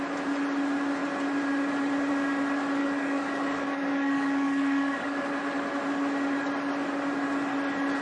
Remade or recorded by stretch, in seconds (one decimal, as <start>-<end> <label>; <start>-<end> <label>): 0.0-2.8 recorded; 2.8-5.2 remade; 5.2-8.0 recorded